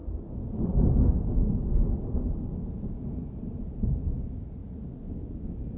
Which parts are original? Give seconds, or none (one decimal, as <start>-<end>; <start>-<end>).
0.0-3.3; 4.6-5.1